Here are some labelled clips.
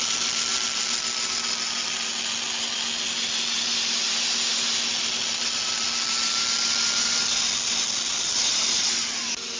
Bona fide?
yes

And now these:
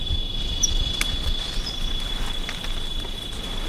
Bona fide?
yes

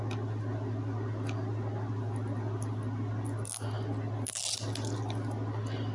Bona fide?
yes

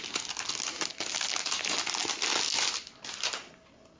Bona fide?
yes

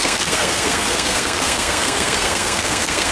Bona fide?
no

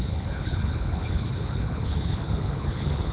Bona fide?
no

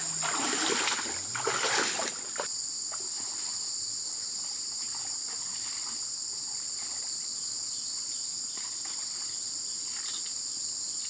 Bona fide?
yes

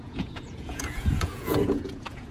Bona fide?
no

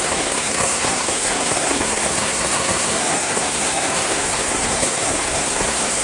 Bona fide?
no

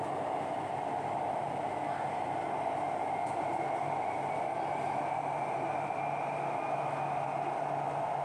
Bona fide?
yes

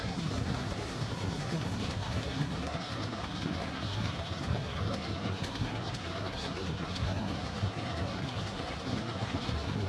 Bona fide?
no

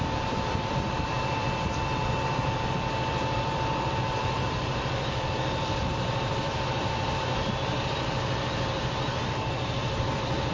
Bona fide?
no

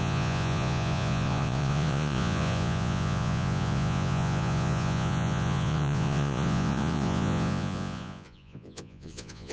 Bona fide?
no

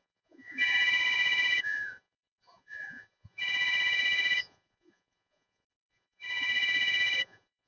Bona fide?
no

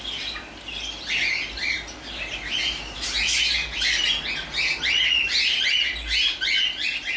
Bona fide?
yes